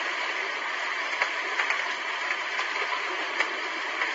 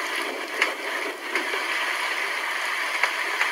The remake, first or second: first